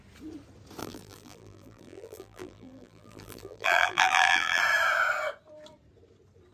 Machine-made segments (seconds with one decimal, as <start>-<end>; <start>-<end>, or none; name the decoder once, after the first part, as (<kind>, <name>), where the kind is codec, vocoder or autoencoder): 0.8-4.6 (vocoder, BigVGAN v2)